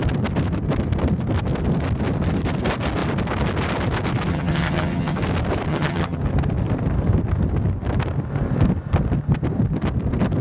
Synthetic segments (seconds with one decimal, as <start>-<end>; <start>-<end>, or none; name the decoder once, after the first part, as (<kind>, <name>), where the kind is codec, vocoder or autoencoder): 4.3-5.2 (vocoder, HiFi-GAN); 5.7-6.2